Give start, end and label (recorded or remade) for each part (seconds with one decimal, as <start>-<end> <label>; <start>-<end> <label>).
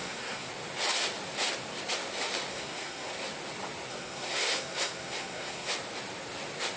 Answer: 0.0-0.5 remade; 0.5-2.5 recorded; 2.5-3.1 remade; 3.1-3.9 recorded; 3.9-5.7 remade; 5.7-6.8 recorded